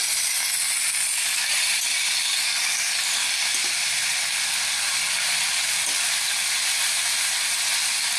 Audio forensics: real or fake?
real